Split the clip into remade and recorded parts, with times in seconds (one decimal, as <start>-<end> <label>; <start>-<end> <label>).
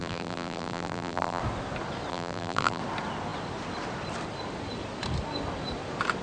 0.0-1.4 remade; 1.4-2.1 recorded; 2.1-2.8 remade; 2.8-6.2 recorded